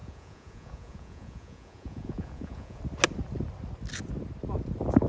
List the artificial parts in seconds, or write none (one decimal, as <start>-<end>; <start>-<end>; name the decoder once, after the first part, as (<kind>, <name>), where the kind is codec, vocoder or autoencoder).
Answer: 0.0-2.8 (vocoder, Vocos)